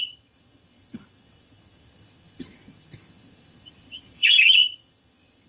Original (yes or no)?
no